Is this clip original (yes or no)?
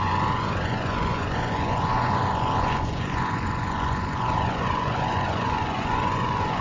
no